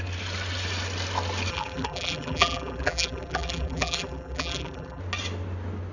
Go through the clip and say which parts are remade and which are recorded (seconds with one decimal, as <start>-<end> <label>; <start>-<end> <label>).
0.0-1.5 recorded; 1.5-5.0 remade; 5.0-5.9 recorded